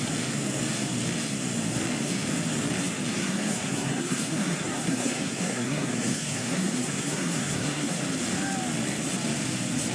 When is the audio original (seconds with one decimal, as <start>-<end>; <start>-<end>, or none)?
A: 0.0-3.1; 8.0-9.9